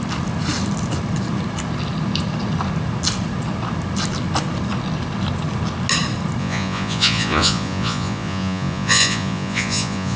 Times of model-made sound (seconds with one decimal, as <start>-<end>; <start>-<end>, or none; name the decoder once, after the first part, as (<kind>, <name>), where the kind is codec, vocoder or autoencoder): 6.4-10.2 (vocoder, Vocos)